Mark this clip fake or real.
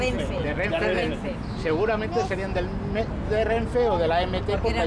real